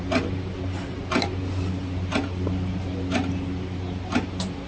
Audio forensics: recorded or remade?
recorded